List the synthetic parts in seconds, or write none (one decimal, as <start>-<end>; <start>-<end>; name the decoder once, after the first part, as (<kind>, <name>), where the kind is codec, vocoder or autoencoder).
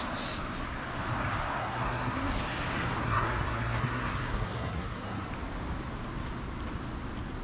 1.6-2.4 (codec, SNAC); 3.0-5.3